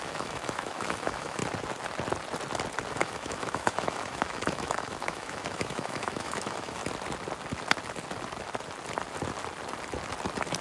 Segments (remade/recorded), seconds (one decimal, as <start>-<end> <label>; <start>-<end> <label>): 0.0-1.4 remade; 1.4-2.9 recorded; 2.9-6.8 remade; 6.8-10.6 recorded